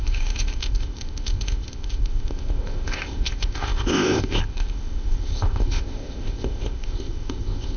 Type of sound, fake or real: fake